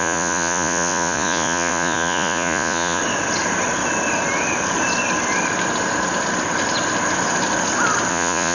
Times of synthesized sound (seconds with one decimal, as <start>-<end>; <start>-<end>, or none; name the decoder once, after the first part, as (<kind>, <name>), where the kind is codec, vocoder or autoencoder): 0.0-3.0 (vocoder, Vocos); 8.1-8.5